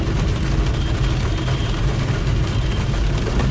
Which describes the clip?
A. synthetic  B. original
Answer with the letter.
B